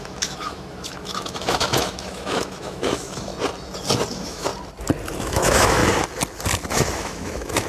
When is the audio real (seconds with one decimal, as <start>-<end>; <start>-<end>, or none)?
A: 3.3-4.1; 4.5-5.2; 5.8-6.7